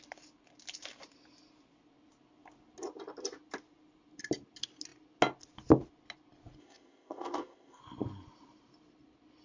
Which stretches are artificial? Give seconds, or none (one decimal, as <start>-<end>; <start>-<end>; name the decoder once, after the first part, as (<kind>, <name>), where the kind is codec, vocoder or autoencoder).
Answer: 6.6-7.8 (codec, ZipCodec)